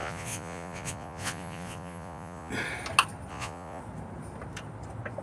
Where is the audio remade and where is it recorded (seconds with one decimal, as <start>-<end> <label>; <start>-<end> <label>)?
0.0-2.5 remade; 2.5-3.3 recorded; 3.3-3.8 remade; 3.8-5.2 recorded